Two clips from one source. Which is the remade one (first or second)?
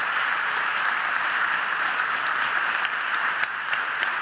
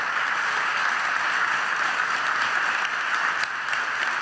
first